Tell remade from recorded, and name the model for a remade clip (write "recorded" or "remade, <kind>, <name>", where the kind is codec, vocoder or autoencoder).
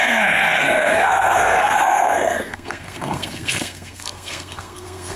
remade, codec, SNAC